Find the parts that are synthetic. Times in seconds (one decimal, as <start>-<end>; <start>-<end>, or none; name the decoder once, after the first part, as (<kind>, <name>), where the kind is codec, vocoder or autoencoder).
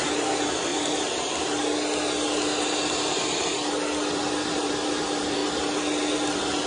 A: 0.0-0.7 (vocoder, BigVGAN v2); 4.3-5.4; 6.3-6.7